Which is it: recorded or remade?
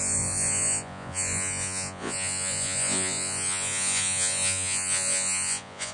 remade